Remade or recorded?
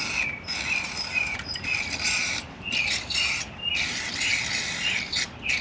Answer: recorded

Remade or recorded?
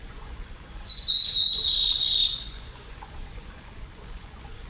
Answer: remade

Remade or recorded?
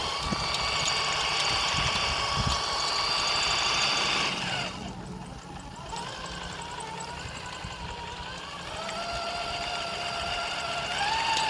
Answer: recorded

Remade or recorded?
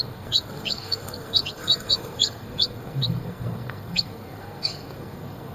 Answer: remade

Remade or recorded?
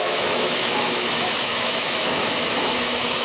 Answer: remade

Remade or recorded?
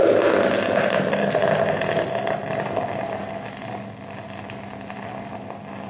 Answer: recorded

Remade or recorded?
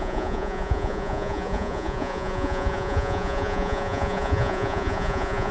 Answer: remade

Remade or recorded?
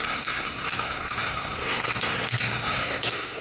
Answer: remade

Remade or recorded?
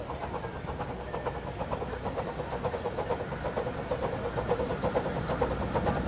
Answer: recorded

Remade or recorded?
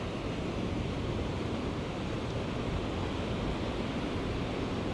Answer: recorded